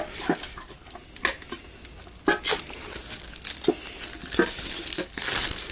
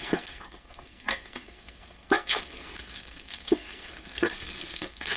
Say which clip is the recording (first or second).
first